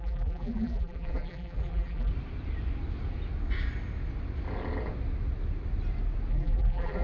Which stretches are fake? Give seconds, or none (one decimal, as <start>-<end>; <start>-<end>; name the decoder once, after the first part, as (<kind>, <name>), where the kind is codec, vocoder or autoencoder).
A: 0.0-2.1 (vocoder, BigVGAN v2); 6.3-7.0